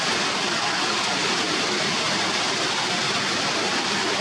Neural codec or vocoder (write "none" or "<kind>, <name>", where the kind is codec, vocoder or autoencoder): none